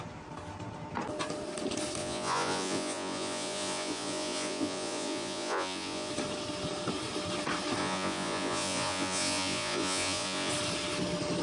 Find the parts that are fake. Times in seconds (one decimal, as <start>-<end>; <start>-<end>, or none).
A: 2.0-6.1; 7.8-10.5